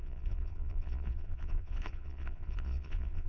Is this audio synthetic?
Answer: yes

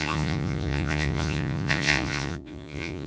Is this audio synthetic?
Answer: yes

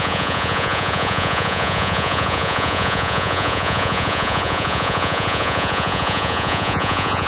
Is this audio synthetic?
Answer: yes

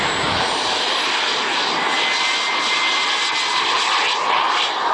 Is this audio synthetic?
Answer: no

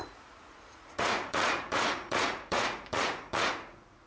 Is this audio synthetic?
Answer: yes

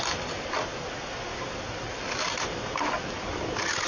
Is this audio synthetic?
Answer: no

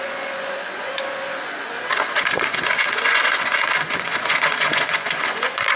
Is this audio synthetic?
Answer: yes